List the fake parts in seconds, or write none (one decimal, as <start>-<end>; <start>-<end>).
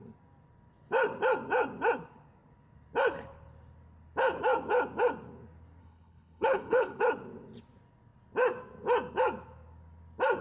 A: 5.8-7.0